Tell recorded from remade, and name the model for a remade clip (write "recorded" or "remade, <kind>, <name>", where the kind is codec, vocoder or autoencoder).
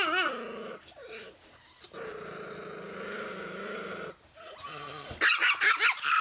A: recorded